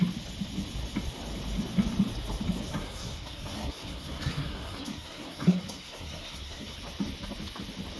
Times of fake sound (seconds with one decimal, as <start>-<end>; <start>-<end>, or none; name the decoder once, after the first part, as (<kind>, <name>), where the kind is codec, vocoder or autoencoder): 2.7-6.8 (codec, SNAC)